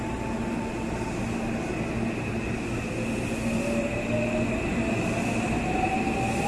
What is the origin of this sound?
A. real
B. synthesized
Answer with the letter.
A